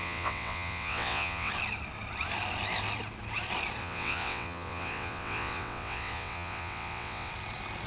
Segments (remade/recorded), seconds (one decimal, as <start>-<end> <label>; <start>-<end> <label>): 0.0-1.5 remade; 1.5-3.8 recorded; 3.8-7.3 remade; 7.3-7.9 recorded